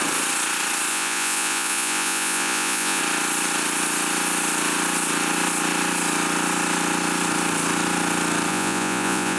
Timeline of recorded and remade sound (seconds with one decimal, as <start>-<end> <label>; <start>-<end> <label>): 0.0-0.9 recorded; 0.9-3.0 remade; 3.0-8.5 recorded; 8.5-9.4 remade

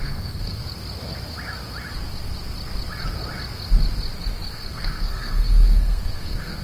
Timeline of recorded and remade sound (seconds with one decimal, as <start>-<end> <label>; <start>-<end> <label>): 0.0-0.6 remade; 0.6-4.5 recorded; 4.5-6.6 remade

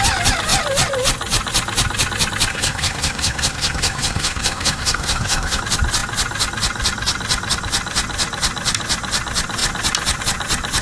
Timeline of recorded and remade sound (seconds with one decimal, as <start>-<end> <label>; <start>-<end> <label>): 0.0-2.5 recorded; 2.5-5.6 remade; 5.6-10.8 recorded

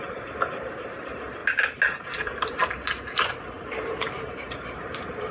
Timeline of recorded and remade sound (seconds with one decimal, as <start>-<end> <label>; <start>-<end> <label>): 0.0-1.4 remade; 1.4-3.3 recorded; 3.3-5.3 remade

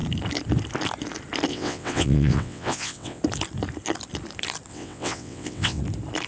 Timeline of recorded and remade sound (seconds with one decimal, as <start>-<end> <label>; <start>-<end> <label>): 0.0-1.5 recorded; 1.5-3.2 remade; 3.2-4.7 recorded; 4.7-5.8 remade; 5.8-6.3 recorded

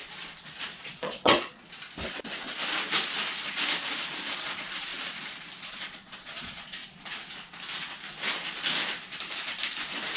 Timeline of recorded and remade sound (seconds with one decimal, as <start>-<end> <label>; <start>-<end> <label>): 0.0-0.8 recorded; 0.8-1.6 remade; 1.6-4.3 recorded; 4.3-4.9 remade; 4.9-5.6 recorded; 5.6-6.8 remade; 6.8-10.2 recorded